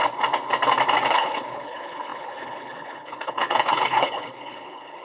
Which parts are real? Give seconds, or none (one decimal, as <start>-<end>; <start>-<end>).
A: 0.0-1.1